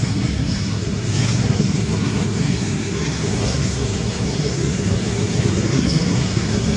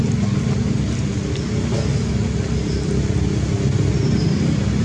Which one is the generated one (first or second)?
first